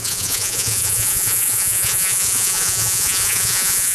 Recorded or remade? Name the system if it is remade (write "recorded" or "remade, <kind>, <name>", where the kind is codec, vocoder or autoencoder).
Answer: remade, vocoder, Vocos